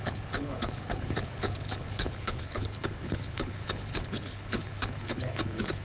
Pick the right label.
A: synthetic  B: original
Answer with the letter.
A